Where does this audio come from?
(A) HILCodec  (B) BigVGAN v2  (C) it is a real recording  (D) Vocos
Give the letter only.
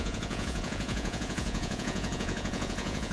D